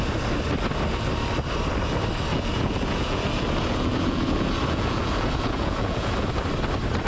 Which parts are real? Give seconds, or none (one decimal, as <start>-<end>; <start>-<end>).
0.0-2.3; 6.3-7.1

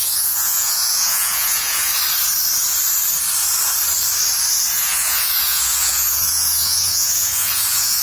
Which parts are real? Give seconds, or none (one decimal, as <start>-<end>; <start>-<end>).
1.9-4.7

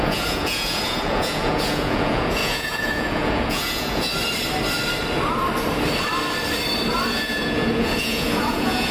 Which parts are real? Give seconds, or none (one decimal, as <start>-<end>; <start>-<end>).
4.1-7.1

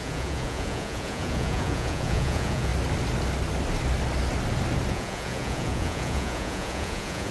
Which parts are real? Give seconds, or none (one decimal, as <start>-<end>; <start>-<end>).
2.7-4.9

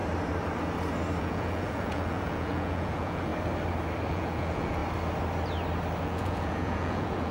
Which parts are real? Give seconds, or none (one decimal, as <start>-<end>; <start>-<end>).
0.0-1.2; 3.3-4.1; 4.8-6.0

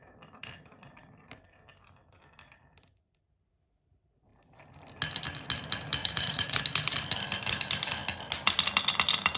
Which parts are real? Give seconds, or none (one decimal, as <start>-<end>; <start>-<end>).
0.0-6.0; 6.6-9.4

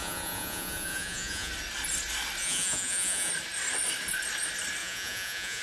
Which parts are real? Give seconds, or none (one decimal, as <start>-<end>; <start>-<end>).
1.5-2.4; 3.3-4.8